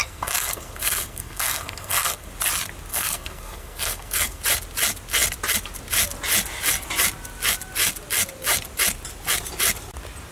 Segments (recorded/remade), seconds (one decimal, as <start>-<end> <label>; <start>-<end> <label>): 0.0-2.3 remade; 2.3-2.9 recorded; 2.9-4.4 remade; 4.4-10.3 recorded